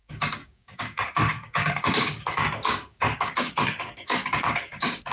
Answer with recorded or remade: remade